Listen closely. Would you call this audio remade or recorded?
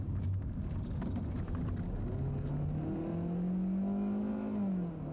recorded